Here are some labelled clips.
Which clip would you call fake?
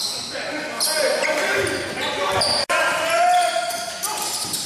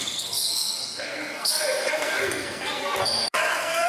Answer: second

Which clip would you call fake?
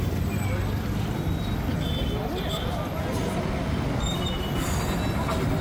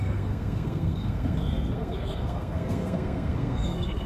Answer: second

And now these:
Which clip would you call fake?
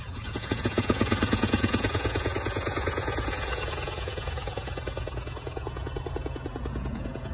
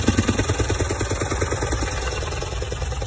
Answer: first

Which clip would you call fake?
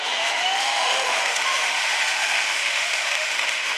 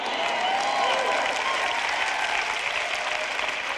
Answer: first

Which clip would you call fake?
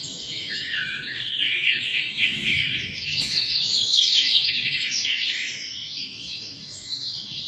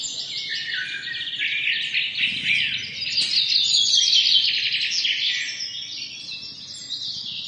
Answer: first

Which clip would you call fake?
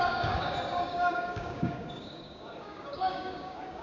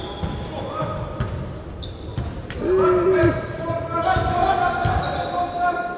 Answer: first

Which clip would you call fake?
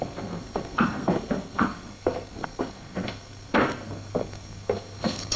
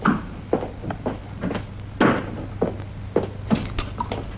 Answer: first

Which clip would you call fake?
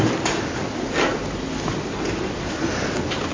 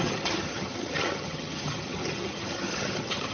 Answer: second